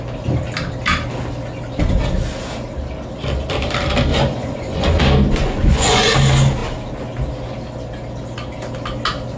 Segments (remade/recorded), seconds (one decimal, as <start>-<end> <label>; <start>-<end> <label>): 0.0-4.1 recorded; 4.1-5.0 remade; 5.0-5.4 recorded; 5.4-6.1 remade; 6.1-9.4 recorded